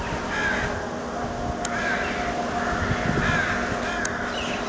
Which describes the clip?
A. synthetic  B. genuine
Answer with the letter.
B